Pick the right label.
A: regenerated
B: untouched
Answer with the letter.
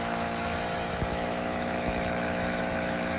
A